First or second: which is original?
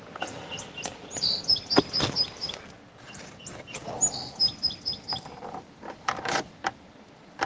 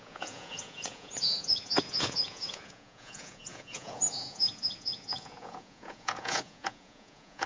first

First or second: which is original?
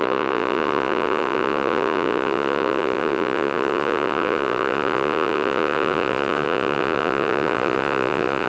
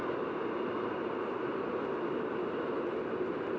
second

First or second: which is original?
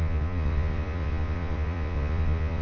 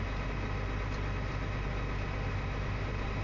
second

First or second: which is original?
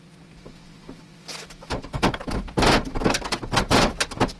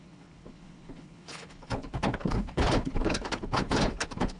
first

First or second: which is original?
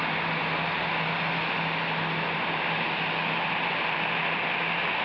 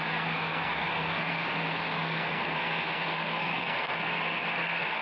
first